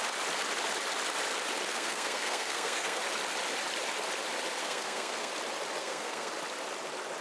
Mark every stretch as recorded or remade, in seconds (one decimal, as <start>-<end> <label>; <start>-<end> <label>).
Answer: 0.0-1.7 recorded; 1.7-3.0 remade; 3.0-4.6 recorded; 4.6-5.3 remade; 5.3-5.8 recorded; 5.8-6.3 remade; 6.3-7.2 recorded